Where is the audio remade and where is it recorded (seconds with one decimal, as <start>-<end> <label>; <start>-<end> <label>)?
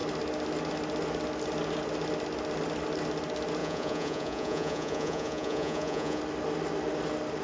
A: 0.0-3.6 recorded; 3.6-6.2 remade; 6.2-7.4 recorded